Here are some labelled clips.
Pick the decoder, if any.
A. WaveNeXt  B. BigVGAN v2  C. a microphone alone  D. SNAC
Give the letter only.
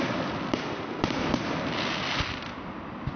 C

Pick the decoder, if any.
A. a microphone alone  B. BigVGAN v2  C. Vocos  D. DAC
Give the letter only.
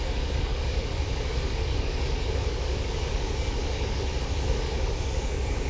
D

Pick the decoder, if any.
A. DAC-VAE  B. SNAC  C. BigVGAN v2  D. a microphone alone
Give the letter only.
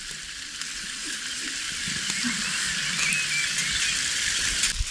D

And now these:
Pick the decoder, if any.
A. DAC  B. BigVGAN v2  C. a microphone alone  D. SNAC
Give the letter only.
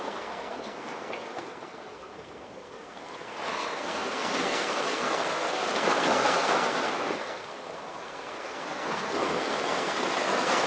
D